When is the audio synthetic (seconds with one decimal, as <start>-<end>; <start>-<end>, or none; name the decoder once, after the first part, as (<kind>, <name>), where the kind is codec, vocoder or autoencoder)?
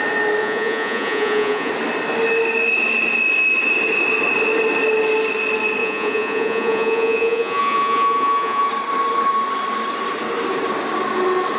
0.4-1.7 (vocoder, Vocos); 5.8-8.7